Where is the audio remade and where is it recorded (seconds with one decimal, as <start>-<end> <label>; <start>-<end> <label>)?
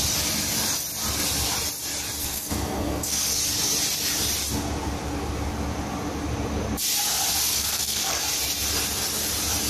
0.0-2.2 recorded; 2.2-3.4 remade; 3.4-7.5 recorded; 7.5-8.2 remade; 8.2-9.7 recorded